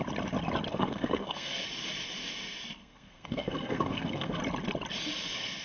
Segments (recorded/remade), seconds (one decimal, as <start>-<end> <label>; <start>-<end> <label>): 0.0-0.7 recorded; 0.7-1.6 remade; 1.6-2.8 recorded; 2.8-4.4 remade; 4.4-5.6 recorded